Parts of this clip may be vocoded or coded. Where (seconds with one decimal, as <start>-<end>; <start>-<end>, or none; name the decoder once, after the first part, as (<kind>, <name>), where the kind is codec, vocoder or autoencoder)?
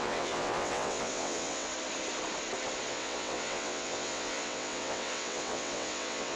0.0-1.7 (vocoder, WaveNeXt); 2.9-6.4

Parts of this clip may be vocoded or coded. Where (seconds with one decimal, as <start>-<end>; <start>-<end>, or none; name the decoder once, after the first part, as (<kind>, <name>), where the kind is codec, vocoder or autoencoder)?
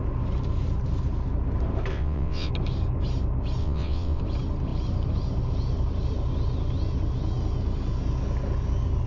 1.9-2.5 (vocoder, WaveNeXt); 3.6-4.2